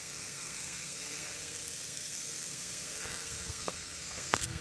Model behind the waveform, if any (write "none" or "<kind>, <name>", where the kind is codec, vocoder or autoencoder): codec, SNAC